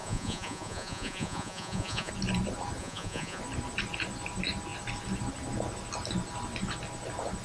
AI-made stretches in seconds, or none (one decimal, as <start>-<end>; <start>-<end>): 0.0-2.1; 2.8-3.4